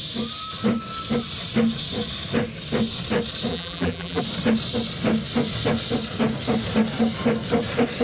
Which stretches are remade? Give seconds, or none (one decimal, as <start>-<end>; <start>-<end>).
3.5-4.2